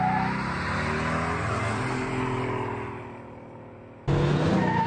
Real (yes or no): yes